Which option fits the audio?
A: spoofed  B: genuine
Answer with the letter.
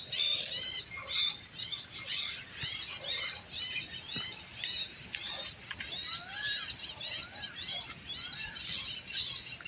B